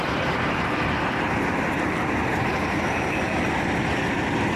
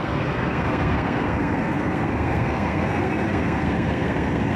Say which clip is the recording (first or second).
first